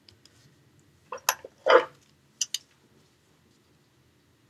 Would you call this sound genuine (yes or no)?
yes